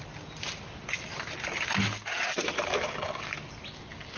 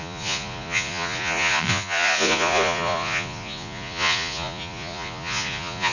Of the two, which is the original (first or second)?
first